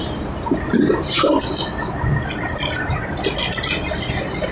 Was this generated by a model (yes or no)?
no